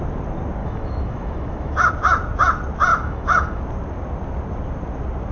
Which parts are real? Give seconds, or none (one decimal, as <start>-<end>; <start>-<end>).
0.0-0.6; 1.9-2.9; 3.6-5.3